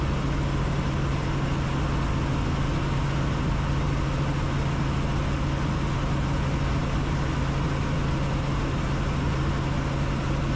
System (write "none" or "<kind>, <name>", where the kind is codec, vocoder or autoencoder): none